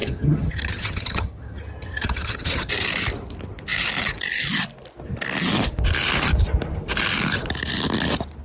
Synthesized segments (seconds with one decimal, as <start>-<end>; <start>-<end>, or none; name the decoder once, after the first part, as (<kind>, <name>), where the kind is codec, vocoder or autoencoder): 0.0-2.7 (vocoder, HiFi-GAN)